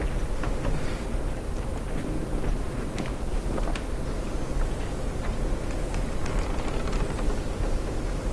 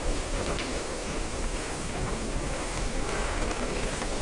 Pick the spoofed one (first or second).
second